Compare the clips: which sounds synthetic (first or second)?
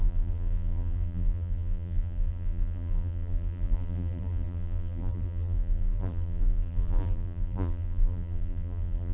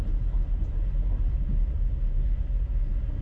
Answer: first